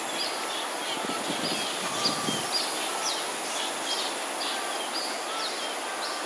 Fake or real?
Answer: real